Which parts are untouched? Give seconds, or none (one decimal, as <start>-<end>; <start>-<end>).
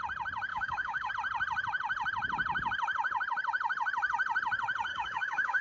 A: 0.0-0.5; 1.1-4.9